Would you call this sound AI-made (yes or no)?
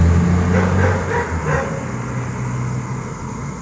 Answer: no